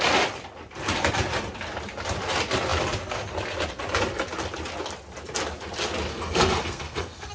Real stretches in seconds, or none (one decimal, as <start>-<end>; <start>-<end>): 0.0-6.1